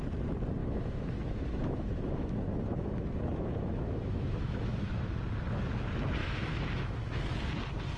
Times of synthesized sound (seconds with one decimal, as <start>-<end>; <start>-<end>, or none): 0.6-4.9; 6.2-7.3